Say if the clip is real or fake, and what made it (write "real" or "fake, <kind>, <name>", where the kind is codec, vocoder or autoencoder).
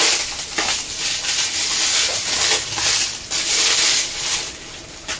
real